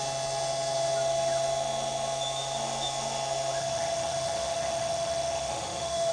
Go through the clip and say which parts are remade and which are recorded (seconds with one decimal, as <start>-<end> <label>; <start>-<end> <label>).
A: 0.0-3.6 recorded; 3.6-6.1 remade